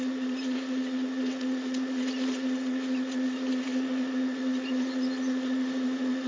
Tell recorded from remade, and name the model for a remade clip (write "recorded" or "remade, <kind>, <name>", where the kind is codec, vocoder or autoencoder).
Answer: remade, vocoder, Vocos